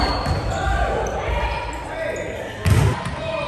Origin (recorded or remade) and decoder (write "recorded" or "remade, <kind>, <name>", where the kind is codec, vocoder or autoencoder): recorded